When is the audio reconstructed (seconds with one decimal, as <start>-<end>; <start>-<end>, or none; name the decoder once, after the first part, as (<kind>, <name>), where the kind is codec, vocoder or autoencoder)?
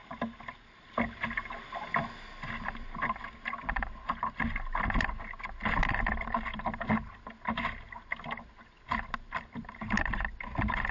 none